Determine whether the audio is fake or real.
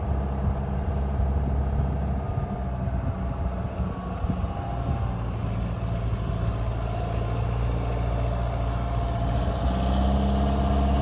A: real